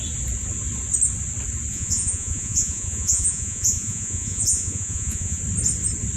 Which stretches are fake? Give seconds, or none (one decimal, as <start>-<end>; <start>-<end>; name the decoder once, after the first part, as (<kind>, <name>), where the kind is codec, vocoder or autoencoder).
1.7-5.4 (vocoder, Vocos)